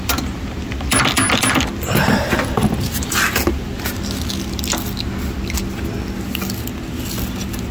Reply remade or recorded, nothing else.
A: recorded